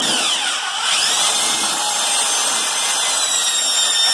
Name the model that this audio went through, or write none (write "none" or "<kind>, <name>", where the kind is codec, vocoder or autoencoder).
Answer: none